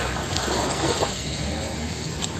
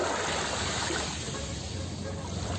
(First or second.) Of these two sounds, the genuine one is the second